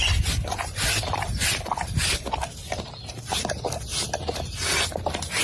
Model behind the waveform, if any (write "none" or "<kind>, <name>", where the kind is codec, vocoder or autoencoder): none